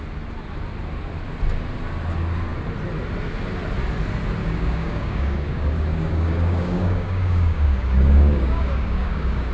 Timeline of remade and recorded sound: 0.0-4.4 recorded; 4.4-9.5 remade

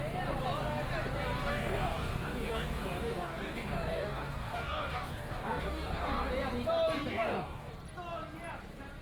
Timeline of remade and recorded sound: 0.0-1.5 recorded; 1.5-6.3 remade; 6.3-7.1 recorded; 7.1-7.7 remade; 7.7-9.0 recorded

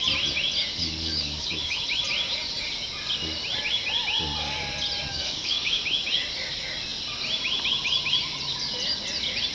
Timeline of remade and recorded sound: 0.0-0.7 recorded; 0.7-1.8 remade; 1.8-5.1 recorded; 5.1-5.8 remade; 5.8-9.5 recorded

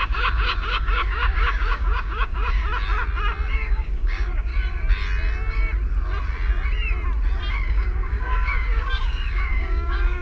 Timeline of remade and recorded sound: 0.0-2.6 remade; 2.6-3.5 recorded; 3.5-4.5 remade; 4.5-7.5 recorded; 7.5-10.2 remade

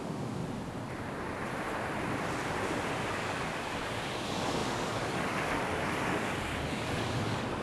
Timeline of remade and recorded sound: 0.0-0.4 remade; 0.4-3.1 recorded; 3.1-7.6 remade